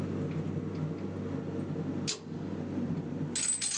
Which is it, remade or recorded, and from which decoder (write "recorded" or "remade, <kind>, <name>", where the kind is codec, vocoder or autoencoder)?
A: recorded